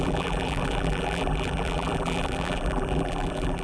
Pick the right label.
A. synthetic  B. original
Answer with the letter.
A